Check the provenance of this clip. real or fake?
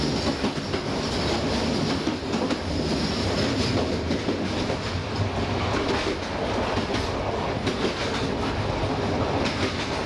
real